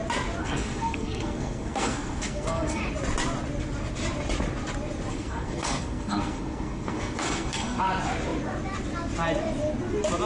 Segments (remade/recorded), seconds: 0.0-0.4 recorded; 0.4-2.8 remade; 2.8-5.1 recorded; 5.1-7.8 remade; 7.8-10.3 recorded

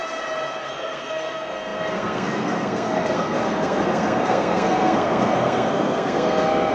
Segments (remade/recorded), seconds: 0.0-0.6 recorded; 0.6-6.7 remade

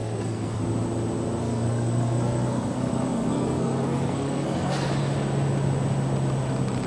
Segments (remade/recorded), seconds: 0.0-0.6 remade; 0.6-1.4 recorded; 1.4-4.9 remade; 4.9-6.9 recorded

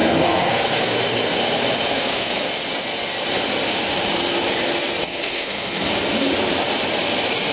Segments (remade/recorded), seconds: 0.0-1.0 remade; 1.0-1.9 recorded; 1.9-2.4 remade; 2.4-5.0 recorded; 5.0-5.9 remade; 5.9-7.5 recorded